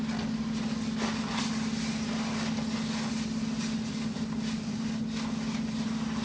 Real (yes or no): yes